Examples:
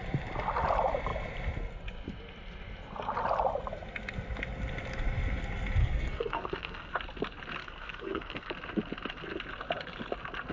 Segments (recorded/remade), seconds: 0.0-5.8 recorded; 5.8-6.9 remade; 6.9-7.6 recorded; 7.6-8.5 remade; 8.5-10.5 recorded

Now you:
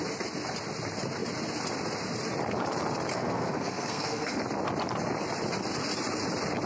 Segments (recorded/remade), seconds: 0.0-3.1 recorded; 3.1-4.4 remade; 4.4-6.7 recorded

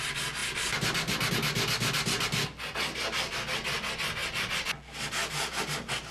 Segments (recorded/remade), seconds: 0.0-6.1 recorded

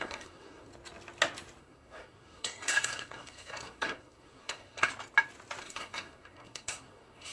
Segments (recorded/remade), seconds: 0.0-0.7 remade; 0.7-1.6 recorded; 1.6-4.9 remade; 4.9-5.6 recorded; 5.6-7.3 remade

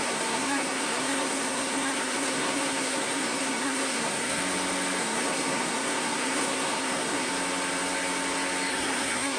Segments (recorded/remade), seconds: 0.0-4.4 remade; 4.4-5.0 recorded; 5.0-7.3 remade; 7.3-8.7 recorded; 8.7-9.4 remade